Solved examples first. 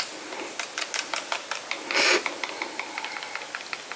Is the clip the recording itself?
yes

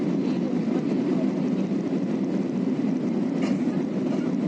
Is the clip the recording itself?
yes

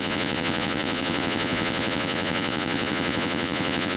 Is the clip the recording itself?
no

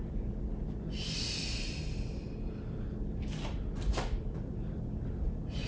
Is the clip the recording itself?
yes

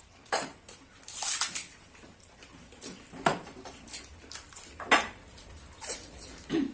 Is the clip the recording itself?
yes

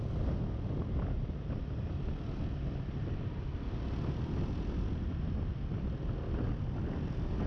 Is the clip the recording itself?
yes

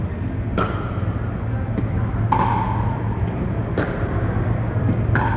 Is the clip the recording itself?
yes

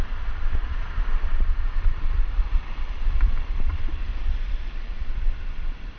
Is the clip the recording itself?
no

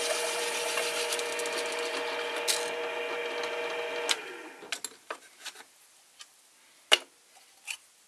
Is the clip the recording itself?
yes